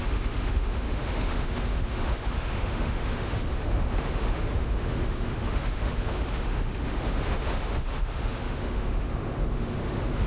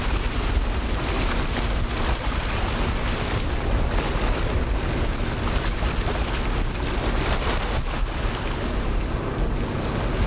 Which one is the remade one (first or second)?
first